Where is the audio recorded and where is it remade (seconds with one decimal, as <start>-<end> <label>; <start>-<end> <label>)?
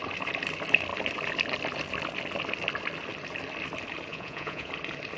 0.0-4.1 recorded; 4.1-4.7 remade; 4.7-5.2 recorded